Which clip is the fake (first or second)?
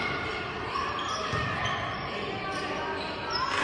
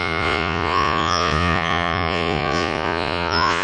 second